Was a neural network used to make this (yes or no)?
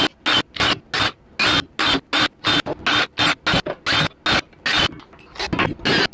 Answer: no